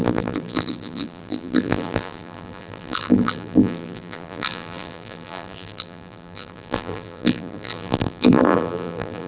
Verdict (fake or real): fake